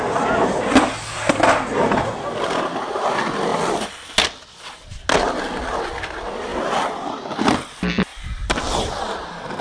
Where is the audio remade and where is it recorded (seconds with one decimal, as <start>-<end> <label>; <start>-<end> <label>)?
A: 0.0-6.5 recorded; 6.5-7.1 remade; 7.1-8.1 recorded; 8.1-9.0 remade; 9.0-9.6 recorded